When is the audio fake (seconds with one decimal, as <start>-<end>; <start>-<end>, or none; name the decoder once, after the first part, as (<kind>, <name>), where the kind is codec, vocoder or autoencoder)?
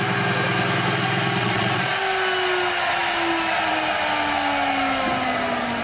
1.4-1.9 (vocoder, Vocos)